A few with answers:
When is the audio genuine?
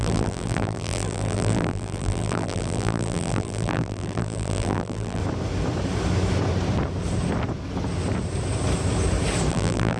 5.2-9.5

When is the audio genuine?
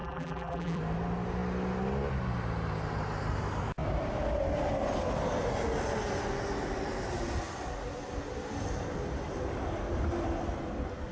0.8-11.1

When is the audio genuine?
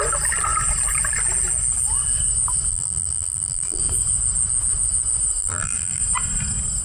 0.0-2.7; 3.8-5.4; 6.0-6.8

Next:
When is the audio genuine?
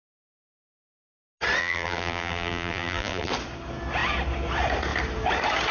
0.0-1.6; 3.3-5.7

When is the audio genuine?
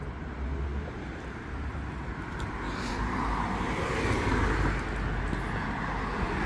0.0-6.5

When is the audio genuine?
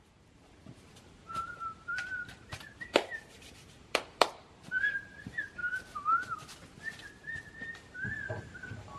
1.9-3.7; 5.6-7.4